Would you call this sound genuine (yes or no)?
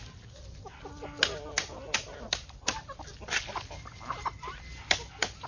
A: yes